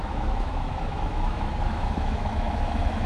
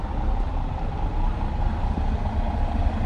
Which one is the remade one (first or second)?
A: first